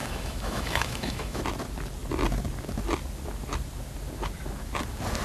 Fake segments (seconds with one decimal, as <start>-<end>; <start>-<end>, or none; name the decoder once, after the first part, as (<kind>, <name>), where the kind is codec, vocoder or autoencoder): 0.0-1.4 (autoencoder, DAC-VAE)